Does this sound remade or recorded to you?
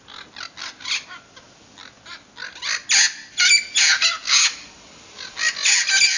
recorded